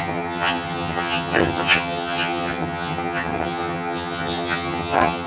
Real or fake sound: fake